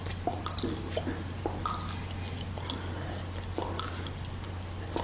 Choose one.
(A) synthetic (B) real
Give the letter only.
B